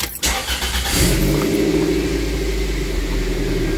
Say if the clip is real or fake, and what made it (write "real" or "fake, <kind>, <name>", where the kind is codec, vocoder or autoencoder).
real